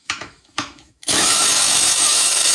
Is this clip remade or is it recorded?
remade